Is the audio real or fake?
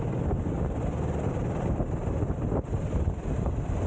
real